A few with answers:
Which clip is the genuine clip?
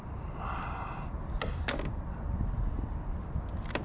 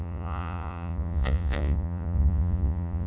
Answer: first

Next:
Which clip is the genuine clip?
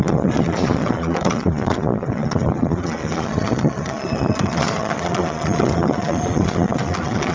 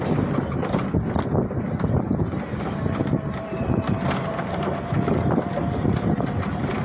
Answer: second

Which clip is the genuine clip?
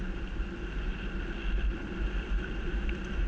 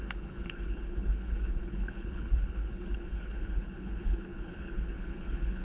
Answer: first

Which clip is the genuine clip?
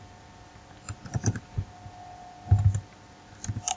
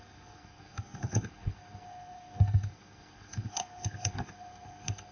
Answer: first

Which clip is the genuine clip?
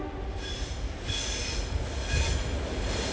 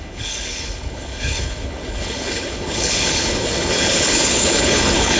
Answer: first